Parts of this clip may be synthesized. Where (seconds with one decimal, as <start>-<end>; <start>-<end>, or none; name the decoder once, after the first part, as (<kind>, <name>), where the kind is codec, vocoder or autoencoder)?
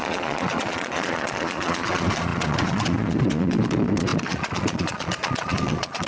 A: 0.0-6.1 (vocoder, Vocos)